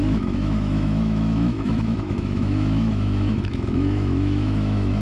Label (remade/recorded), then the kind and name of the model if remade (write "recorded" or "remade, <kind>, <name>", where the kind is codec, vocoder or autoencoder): remade, autoencoder, DAC-VAE